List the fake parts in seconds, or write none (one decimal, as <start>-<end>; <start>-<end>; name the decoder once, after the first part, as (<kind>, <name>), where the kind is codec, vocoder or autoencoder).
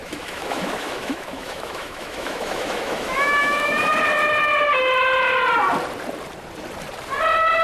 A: 0.0-3.8 (autoencoder, DAC-VAE)